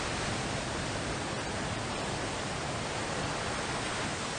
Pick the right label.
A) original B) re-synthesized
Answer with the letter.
A